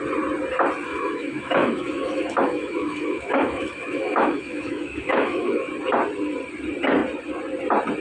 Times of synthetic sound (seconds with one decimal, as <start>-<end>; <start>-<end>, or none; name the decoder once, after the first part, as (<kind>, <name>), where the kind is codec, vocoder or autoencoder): 0.9-5.7 (autoencoder, DAC-VAE)